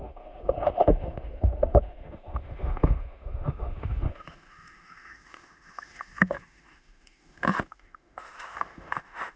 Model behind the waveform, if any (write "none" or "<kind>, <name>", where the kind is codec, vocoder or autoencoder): autoencoder, DAC-VAE